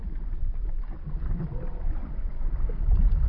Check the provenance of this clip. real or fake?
real